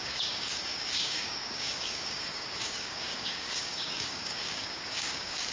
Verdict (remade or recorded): remade